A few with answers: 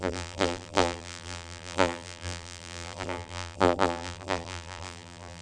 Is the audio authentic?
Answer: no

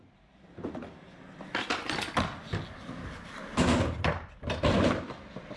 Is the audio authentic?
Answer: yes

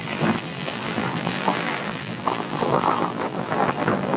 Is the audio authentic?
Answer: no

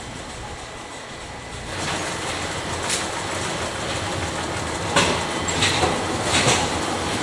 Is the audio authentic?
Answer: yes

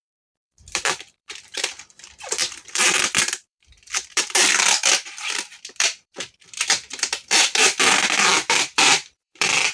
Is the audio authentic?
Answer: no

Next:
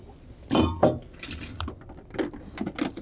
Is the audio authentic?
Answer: yes